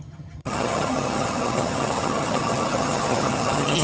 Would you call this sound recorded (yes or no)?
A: no